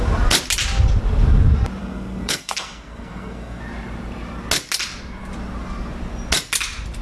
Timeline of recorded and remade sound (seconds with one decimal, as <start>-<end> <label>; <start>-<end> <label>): 0.0-1.8 recorded; 1.8-3.6 remade; 3.6-7.0 recorded